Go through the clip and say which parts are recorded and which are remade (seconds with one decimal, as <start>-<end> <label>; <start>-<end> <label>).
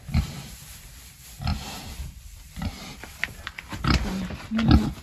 0.0-1.5 recorded; 1.5-4.5 remade; 4.5-5.0 recorded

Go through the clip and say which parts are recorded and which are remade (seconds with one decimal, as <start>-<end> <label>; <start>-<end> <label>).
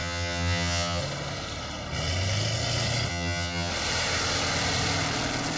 0.0-1.0 remade; 1.0-3.1 recorded; 3.1-3.7 remade; 3.7-5.6 recorded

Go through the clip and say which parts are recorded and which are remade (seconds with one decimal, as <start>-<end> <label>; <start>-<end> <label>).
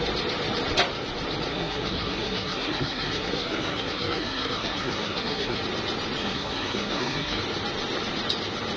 0.0-1.5 recorded; 1.5-5.6 remade; 5.6-6.2 recorded; 6.2-7.4 remade; 7.4-8.8 recorded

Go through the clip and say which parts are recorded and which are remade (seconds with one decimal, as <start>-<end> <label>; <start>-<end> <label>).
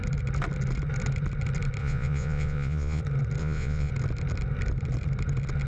0.0-1.8 recorded; 1.8-3.0 remade; 3.0-3.4 recorded; 3.4-3.9 remade; 3.9-5.7 recorded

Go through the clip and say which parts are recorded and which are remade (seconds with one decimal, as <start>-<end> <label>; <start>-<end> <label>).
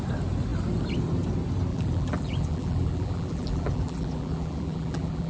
0.0-1.7 recorded; 1.7-5.3 remade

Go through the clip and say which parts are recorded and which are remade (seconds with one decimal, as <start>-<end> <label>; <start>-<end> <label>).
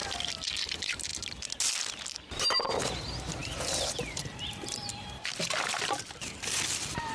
0.0-1.1 remade; 1.1-1.7 recorded; 1.7-7.1 remade